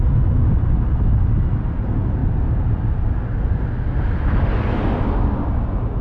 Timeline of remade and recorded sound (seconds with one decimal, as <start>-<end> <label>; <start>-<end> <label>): 0.0-6.0 recorded